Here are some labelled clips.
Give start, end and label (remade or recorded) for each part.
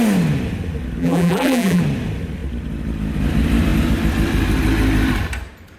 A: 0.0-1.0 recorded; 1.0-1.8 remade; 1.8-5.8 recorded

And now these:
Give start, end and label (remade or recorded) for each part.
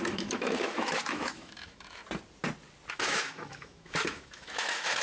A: 0.0-2.0 remade; 2.0-2.9 recorded; 2.9-5.0 remade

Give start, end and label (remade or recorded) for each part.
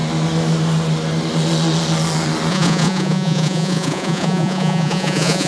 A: 0.0-2.5 recorded; 2.5-5.5 remade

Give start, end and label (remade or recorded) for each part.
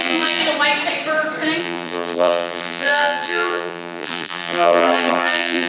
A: 0.0-0.4 remade; 0.4-1.6 recorded; 1.6-5.7 remade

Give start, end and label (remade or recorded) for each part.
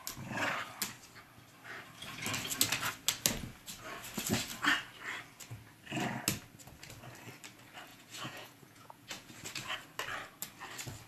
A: 0.0-7.9 recorded; 7.9-9.3 remade; 9.3-11.1 recorded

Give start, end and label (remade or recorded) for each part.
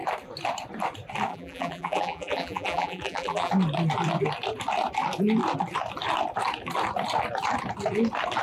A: 0.0-1.3 recorded; 1.3-3.5 remade; 3.5-8.4 recorded